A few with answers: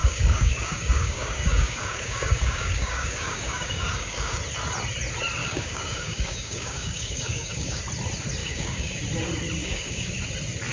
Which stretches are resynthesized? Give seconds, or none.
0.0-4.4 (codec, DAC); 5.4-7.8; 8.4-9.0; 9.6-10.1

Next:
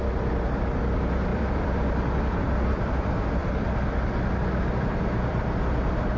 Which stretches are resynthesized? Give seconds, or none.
1.3-2.4 (vocoder, BigVGAN v2)

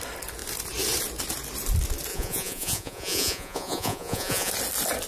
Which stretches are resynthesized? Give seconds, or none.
2.1-4.5 (vocoder, Vocos)

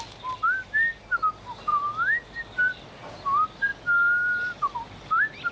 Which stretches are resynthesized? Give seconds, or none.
none

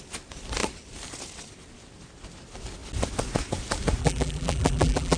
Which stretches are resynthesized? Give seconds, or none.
4.0-5.2 (vocoder, BigVGAN v2)

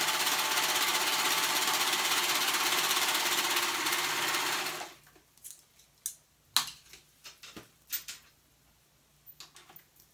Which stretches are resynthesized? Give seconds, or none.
none

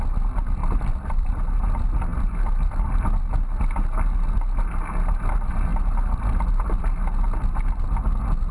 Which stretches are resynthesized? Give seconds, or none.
0.6-1.4 (vocoder, BigVGAN v2); 2.1-3.0

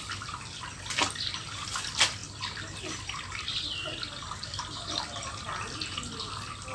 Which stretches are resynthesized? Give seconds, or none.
none